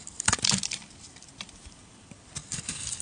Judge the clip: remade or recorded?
remade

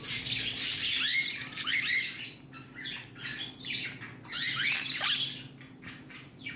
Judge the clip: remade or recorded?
recorded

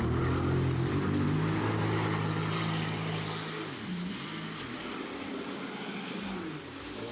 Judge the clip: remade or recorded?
recorded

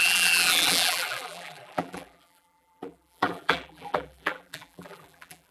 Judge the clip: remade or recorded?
remade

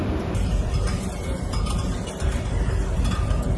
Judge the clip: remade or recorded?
remade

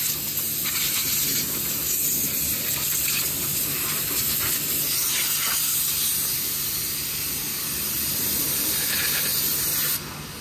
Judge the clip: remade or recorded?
recorded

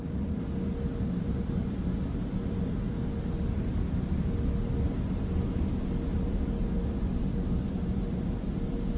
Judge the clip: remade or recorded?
recorded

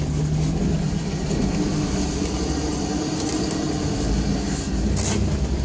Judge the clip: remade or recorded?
recorded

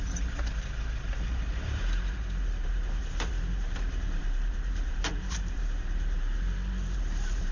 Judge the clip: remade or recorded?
remade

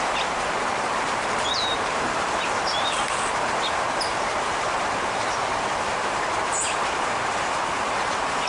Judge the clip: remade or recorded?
remade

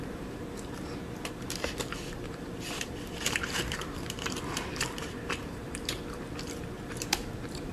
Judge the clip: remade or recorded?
remade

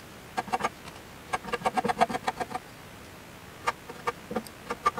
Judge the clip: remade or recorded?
recorded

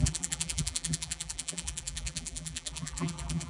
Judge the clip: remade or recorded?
remade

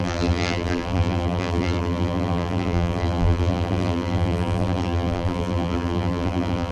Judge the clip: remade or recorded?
remade